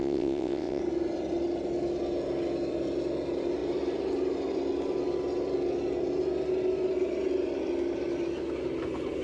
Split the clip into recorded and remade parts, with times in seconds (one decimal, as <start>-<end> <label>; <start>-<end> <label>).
0.0-0.8 remade; 0.8-9.2 recorded